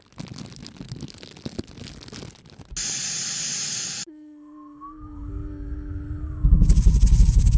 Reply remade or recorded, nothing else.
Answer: recorded